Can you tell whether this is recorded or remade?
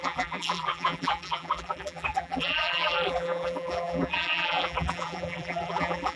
remade